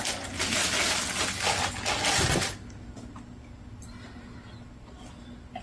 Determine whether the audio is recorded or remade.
recorded